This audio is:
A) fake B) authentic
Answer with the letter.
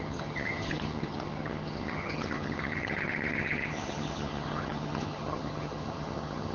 A